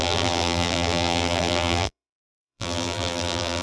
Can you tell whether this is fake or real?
fake